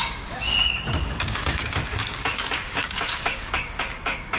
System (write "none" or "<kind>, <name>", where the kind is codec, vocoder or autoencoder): codec, DAC